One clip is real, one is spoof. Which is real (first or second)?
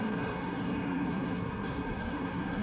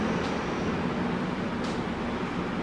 second